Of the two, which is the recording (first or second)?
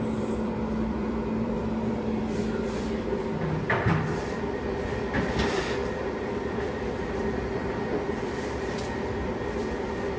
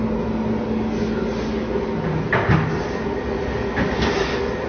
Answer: second